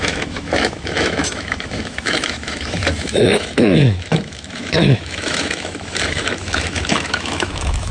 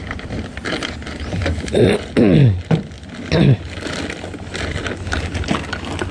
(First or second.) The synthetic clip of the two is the first